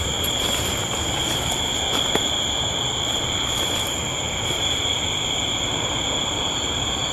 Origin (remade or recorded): remade